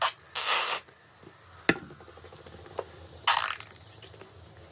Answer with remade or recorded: recorded